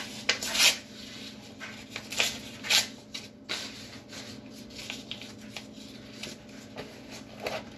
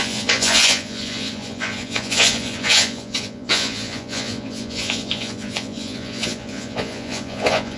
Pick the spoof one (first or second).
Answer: second